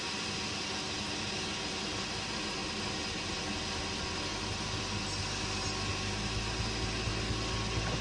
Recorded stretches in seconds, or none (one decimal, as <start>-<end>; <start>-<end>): 0.0-4.3; 4.8-8.0